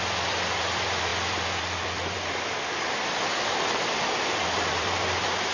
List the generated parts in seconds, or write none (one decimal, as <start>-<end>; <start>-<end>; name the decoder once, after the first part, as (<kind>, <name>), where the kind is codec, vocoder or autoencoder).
0.0-5.5 (vocoder, BigVGAN v2)